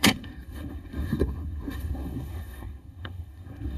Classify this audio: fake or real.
fake